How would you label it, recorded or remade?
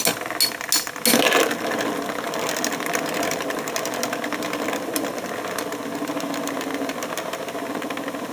recorded